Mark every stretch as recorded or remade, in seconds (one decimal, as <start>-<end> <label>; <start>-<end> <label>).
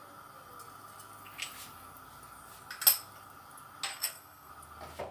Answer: 0.0-3.9 recorded; 3.9-4.5 remade; 4.5-5.1 recorded